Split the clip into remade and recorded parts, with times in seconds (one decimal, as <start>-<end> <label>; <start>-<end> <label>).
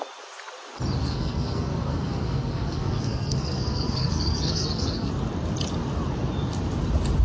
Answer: 0.0-1.0 recorded; 1.0-5.1 remade; 5.1-7.2 recorded